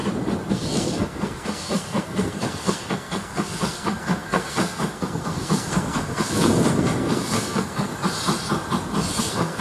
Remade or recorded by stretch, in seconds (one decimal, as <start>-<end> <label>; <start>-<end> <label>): 0.0-0.5 recorded; 0.5-7.9 remade; 7.9-9.2 recorded; 9.2-9.6 remade